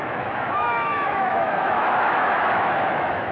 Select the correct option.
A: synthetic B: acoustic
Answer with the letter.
A